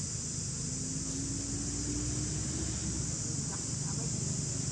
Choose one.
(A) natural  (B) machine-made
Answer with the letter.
A